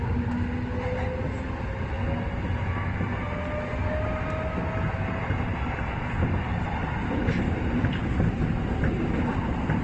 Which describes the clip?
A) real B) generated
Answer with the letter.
A